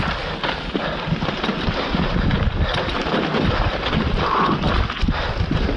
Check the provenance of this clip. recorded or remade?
recorded